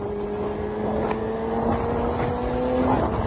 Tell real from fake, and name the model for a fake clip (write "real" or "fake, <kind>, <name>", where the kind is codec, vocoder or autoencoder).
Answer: real